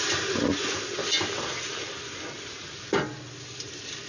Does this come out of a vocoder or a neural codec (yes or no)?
no